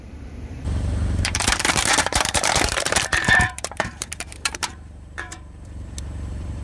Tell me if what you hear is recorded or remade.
remade